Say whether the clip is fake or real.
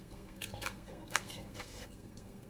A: fake